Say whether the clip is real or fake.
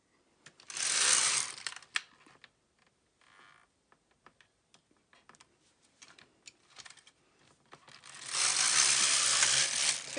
real